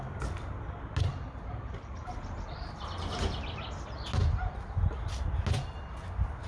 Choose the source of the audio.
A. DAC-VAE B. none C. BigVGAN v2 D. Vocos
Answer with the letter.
B